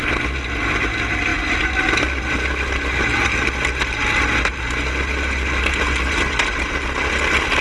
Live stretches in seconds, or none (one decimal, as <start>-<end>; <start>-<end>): 0.0-7.6